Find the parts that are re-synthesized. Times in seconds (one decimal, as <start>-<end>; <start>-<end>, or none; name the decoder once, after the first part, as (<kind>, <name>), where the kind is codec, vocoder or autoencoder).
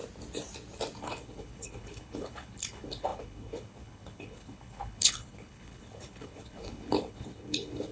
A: 1.0-7.9 (codec, HILCodec)